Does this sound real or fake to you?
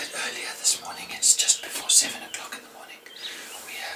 real